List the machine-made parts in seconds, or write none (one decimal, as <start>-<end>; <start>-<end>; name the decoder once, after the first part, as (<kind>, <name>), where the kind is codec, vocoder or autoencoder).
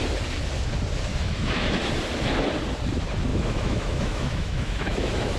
1.1-1.9 (autoencoder, DAC-VAE); 3.3-5.4